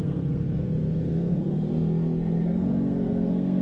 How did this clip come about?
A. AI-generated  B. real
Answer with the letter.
A